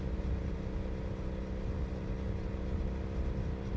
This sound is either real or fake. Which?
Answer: real